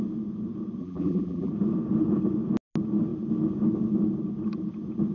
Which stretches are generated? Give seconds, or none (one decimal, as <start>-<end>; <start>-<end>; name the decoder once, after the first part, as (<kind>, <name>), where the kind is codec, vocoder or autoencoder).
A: 0.8-1.5 (vocoder, BigVGAN v2)